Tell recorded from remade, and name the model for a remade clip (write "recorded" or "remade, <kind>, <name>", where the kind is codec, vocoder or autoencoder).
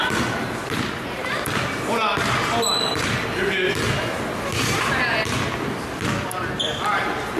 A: recorded